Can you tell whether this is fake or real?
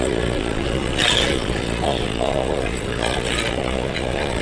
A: fake